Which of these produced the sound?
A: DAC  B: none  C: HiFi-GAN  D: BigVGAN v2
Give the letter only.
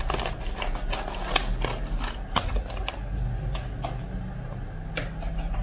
B